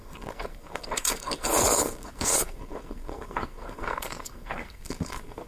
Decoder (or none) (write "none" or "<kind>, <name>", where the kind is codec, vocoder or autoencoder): codec, SNAC